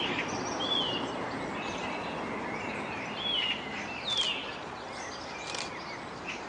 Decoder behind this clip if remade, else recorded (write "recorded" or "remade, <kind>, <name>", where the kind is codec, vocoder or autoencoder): recorded